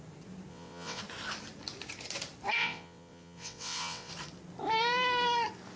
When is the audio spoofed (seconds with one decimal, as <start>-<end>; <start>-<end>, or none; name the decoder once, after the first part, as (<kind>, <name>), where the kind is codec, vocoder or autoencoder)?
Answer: 0.5-1.0 (vocoder, WaveNeXt); 2.6-4.1